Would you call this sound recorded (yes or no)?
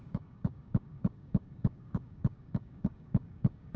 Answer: no